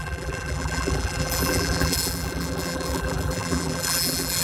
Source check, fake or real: fake